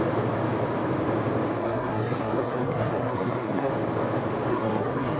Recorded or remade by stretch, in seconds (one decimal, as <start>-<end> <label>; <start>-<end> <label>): 0.0-1.6 recorded; 1.6-3.7 remade; 3.7-4.5 recorded; 4.5-5.2 remade